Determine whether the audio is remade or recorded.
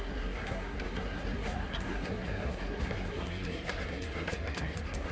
remade